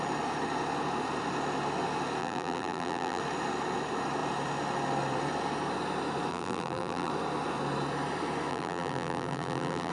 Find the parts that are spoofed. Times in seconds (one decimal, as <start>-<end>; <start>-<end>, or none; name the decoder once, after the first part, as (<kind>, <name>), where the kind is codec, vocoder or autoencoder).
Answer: 2.2-3.2 (vocoder, BigVGAN v2); 6.3-7.1; 8.5-9.9